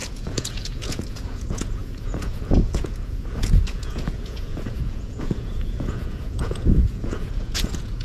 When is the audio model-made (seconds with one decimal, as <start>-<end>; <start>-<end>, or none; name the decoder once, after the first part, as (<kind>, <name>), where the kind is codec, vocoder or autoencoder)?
0.0-8.0 (vocoder, Vocos)